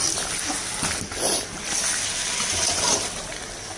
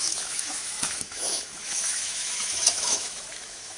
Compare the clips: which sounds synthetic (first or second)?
second